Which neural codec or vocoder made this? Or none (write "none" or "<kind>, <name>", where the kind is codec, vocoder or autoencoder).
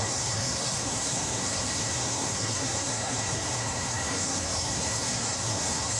codec, SNAC